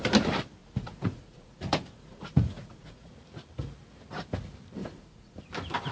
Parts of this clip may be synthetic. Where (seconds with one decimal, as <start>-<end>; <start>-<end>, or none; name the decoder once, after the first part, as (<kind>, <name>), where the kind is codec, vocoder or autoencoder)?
0.6-3.1 (vocoder, Vocos); 4.8-5.4